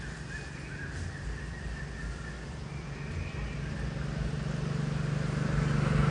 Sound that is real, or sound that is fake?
real